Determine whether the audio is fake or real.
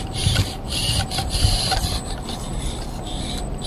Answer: real